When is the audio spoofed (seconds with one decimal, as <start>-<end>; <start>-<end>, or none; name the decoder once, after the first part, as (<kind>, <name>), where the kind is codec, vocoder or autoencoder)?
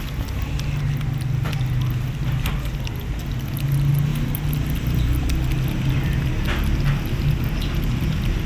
4.1-7.5 (vocoder, BigVGAN v2)